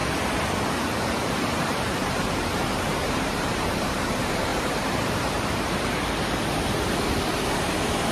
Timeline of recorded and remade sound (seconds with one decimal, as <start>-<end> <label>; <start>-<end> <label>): 0.0-1.4 recorded; 1.4-8.1 remade